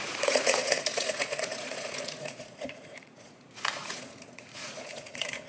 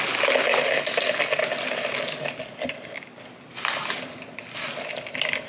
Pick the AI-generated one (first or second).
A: first